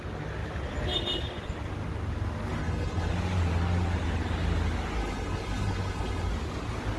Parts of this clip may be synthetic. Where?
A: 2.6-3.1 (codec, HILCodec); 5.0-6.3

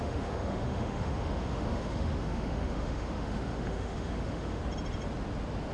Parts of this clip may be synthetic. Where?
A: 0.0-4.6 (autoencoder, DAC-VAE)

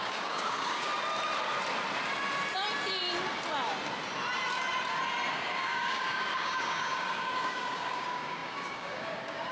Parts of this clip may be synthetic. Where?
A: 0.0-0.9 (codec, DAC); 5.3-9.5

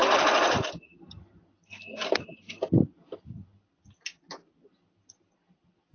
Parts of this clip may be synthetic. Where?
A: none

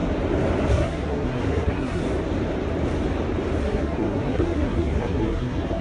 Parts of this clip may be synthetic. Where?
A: 0.7-2.0 (codec, SNAC); 3.6-5.8

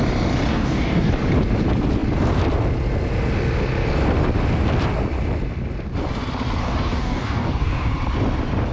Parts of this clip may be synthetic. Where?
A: 0.5-1.1 (codec, DAC); 6.6-7.9

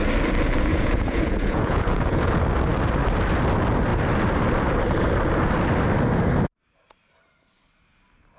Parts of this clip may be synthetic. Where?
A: 0.7-2.3 (vocoder, Vocos)